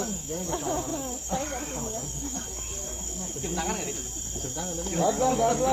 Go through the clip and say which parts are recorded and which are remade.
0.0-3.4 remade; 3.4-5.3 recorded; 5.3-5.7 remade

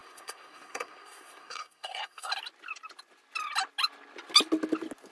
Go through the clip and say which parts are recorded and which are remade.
0.0-2.3 remade; 2.3-5.1 recorded

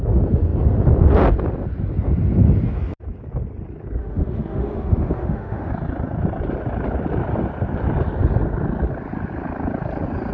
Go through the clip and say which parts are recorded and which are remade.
0.0-4.0 recorded; 4.0-5.7 remade; 5.7-10.3 recorded

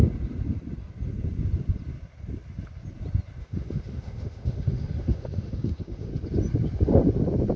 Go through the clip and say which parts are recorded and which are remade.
0.0-3.4 recorded; 3.4-6.1 remade; 6.1-7.6 recorded